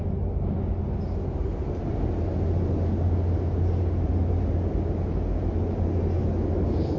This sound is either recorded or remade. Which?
recorded